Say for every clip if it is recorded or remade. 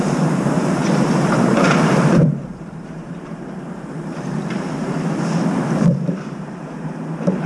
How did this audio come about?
remade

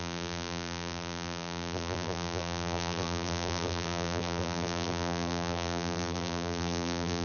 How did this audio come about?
remade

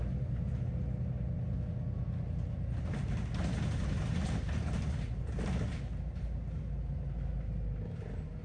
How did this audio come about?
recorded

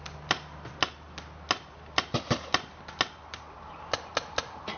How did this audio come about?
recorded